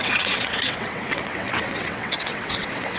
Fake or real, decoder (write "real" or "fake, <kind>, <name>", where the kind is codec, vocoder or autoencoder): fake, vocoder, WaveNeXt